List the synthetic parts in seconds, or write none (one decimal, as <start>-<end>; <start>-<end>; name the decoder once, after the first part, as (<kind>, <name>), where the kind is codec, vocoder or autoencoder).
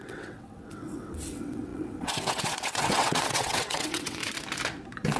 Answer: 0.0-4.2 (vocoder, WaveNeXt)